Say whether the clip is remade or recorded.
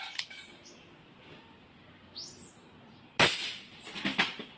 recorded